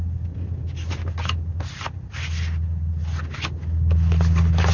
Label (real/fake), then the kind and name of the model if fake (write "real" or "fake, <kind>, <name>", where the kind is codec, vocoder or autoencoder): real